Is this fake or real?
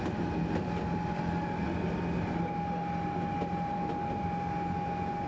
real